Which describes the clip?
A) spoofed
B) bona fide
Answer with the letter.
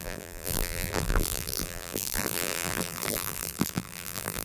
A